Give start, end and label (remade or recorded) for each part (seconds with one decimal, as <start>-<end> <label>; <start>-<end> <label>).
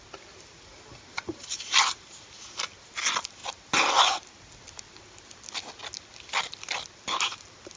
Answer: 0.0-7.8 recorded